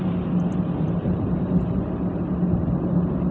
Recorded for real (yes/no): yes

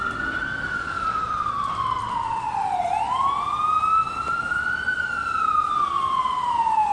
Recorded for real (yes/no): yes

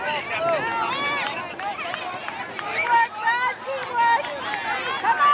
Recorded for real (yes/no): yes